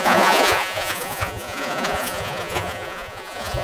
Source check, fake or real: fake